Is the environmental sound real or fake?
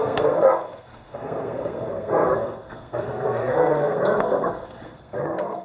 fake